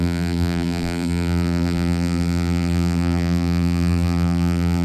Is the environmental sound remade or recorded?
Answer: remade